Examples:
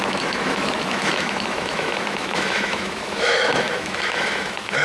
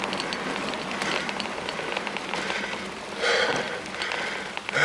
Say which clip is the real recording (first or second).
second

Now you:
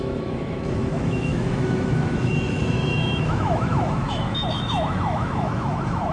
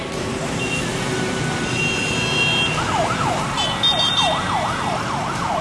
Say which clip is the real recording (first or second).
second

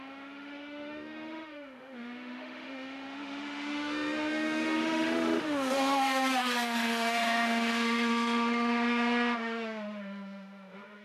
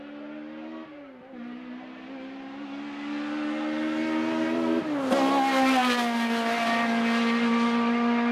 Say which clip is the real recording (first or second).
second